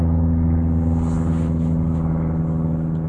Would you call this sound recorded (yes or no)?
yes